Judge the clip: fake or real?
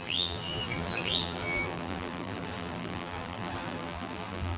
fake